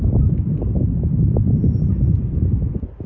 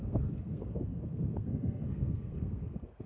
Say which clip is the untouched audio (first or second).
first